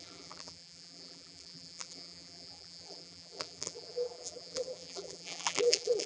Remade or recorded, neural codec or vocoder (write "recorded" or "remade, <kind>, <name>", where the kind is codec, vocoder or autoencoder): remade, vocoder, BigVGAN v2